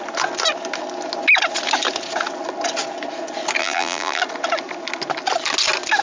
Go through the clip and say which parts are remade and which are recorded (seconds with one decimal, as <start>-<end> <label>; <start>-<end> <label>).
0.0-3.6 recorded; 3.6-4.2 remade; 4.2-6.0 recorded